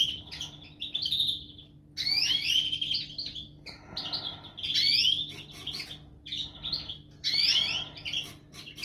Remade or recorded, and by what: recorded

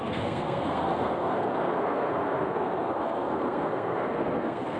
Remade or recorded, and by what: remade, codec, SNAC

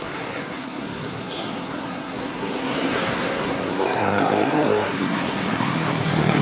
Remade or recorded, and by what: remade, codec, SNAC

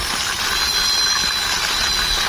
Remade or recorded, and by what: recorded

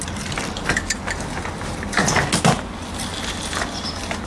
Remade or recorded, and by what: recorded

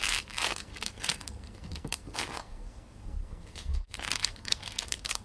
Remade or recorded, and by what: remade, codec, SNAC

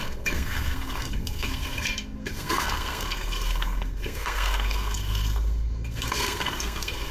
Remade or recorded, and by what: remade, codec, SNAC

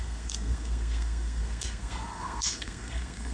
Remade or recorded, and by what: remade, codec, SNAC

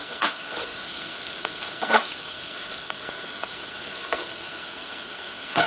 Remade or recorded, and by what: remade, codec, SNAC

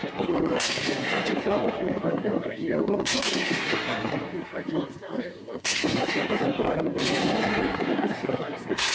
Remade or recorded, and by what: remade, codec, SNAC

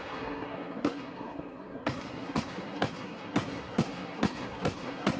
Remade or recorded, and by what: remade, codec, SNAC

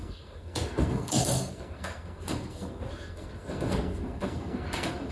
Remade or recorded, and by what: remade, codec, SNAC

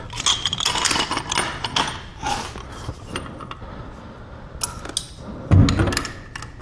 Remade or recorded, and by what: recorded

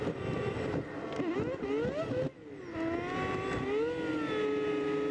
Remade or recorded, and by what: recorded